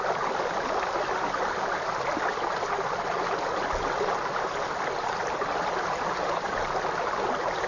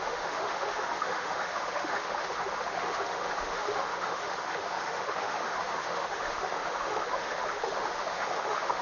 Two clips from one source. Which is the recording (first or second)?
first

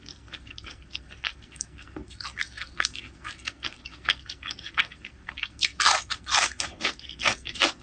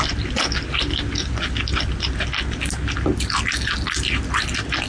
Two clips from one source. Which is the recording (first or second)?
second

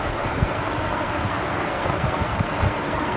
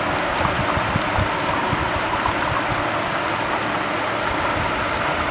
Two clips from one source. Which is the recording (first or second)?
second